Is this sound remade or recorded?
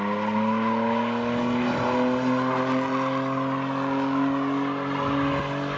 recorded